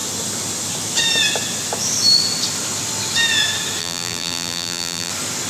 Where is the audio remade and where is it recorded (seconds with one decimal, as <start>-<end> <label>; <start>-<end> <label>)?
0.0-3.8 recorded; 3.8-5.1 remade; 5.1-5.5 recorded